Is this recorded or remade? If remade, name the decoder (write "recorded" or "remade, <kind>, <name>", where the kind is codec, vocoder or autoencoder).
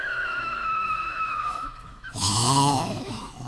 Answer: remade, autoencoder, DAC-VAE